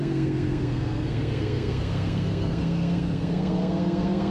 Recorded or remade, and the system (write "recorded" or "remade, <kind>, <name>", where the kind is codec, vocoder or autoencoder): remade, codec, SNAC